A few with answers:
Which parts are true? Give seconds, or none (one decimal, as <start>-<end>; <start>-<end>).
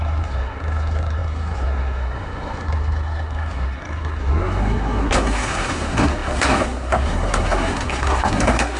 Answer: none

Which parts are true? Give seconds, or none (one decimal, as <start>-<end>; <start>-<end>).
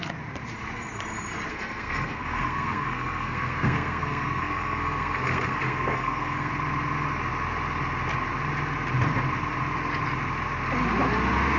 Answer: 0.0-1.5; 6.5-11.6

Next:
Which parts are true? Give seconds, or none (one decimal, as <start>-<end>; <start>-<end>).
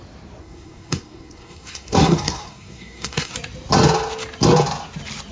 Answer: 0.0-0.4; 3.3-5.3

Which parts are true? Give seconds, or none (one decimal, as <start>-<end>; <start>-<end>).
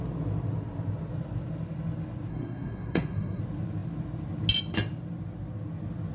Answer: 0.0-2.3; 3.4-6.1